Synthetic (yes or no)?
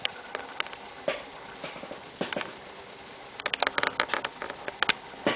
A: no